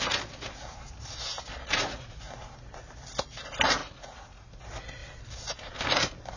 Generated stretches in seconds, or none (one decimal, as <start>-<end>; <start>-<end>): 1.7-2.2; 3.8-4.6